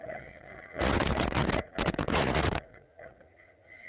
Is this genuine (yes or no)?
no